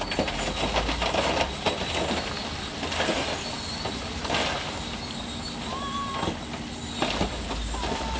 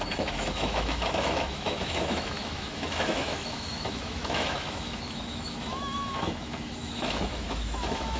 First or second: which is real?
first